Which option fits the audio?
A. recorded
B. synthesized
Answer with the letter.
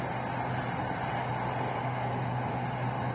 A